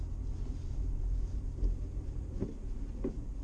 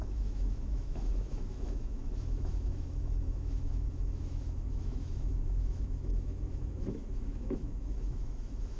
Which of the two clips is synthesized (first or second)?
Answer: second